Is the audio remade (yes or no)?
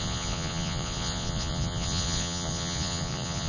yes